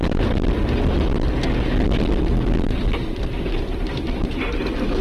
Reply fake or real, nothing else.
real